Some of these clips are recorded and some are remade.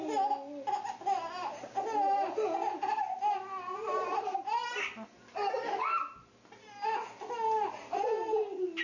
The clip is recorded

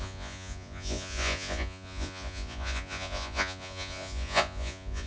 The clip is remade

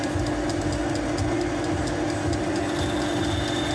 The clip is recorded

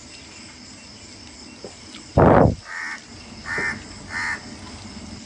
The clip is recorded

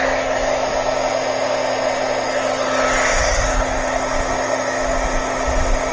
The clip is recorded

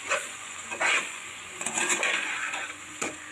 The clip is remade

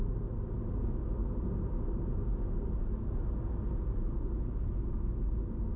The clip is recorded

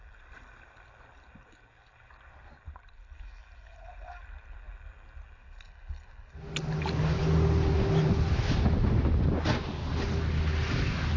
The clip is recorded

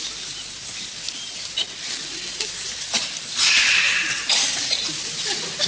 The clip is recorded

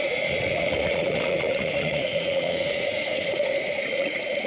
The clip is remade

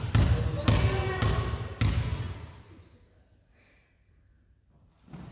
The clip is recorded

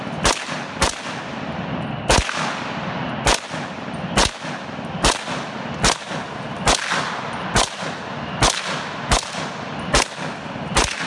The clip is recorded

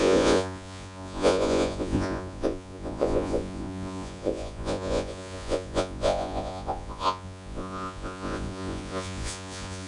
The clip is remade